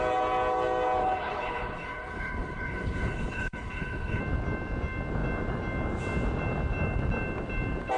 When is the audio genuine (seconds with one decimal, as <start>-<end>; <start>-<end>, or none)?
0.0-1.0; 4.2-8.0

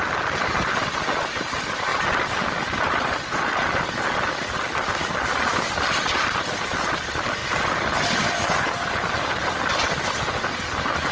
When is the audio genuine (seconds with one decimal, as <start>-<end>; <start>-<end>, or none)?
0.0-11.1

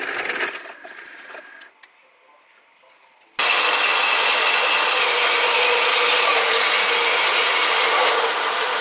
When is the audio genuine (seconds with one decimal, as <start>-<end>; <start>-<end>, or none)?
0.0-8.8

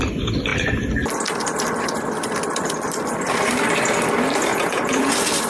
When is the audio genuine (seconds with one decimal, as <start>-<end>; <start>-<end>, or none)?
0.0-4.5; 5.1-5.5

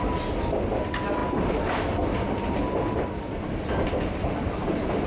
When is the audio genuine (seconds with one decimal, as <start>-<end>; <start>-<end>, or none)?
0.0-5.1

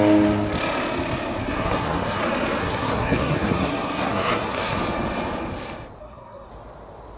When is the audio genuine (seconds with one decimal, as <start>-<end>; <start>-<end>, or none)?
0.0-1.4; 2.2-2.6; 4.8-6.0; 6.5-7.2

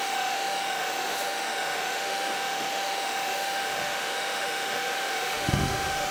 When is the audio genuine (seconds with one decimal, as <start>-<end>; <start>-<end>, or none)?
none

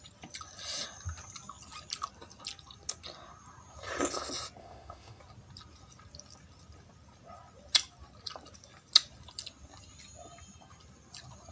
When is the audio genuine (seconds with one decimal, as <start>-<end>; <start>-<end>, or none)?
0.0-4.6; 5.2-11.5